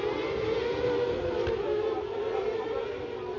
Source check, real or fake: real